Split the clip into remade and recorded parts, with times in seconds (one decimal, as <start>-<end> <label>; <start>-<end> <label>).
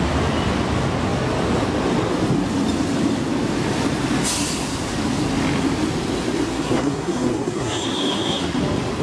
0.0-6.5 recorded; 6.5-8.6 remade; 8.6-9.0 recorded